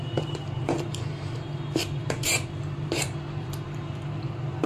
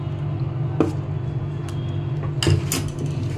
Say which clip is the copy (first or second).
first